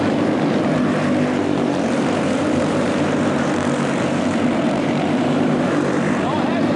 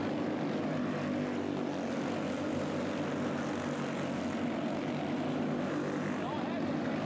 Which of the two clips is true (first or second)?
second